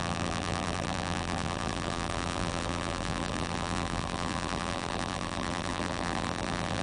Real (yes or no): no